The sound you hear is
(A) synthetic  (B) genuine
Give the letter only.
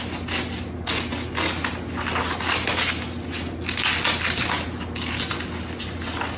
B